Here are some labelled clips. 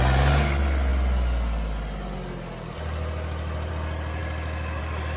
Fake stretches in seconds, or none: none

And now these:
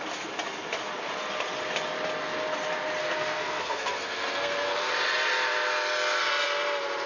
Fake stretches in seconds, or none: 3.0-4.9 (codec, SNAC)

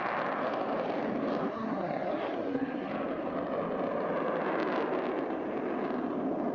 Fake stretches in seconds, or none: 1.5-2.9 (codec, SNAC)

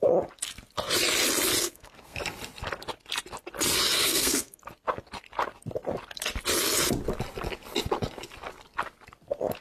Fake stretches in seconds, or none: 1.6-2.2 (codec, SNAC); 4.0-4.6

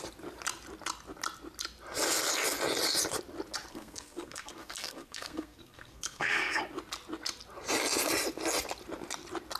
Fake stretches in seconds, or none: 3.7-6.6 (codec, SNAC)

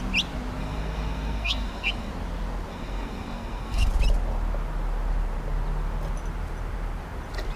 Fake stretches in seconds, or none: 0.6-2.1 (codec, SNAC); 2.7-3.9

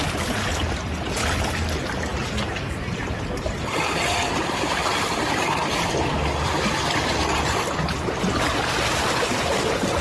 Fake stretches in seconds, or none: none

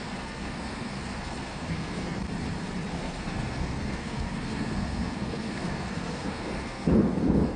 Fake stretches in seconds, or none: 0.0-2.2 (codec, SNAC); 2.9-7.6